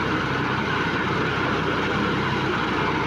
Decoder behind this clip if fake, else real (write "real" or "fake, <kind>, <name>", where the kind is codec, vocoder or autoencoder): real